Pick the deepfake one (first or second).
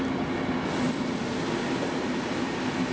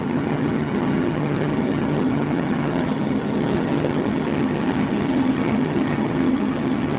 second